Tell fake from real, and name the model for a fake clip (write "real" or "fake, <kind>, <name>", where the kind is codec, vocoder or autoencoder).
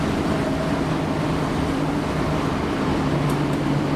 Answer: real